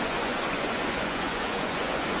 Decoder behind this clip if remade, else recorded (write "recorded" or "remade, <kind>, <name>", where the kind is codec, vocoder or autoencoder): remade, vocoder, Vocos